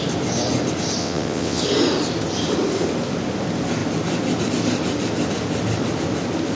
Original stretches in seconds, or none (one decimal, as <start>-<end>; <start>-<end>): 0.0-1.0; 1.6-6.6